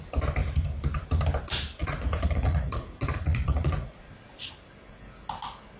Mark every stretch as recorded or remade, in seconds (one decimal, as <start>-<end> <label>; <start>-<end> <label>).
0.0-1.8 recorded; 1.8-4.0 remade; 4.0-5.8 recorded